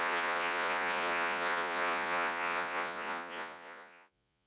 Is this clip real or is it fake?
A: fake